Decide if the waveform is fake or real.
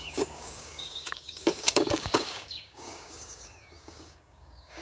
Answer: fake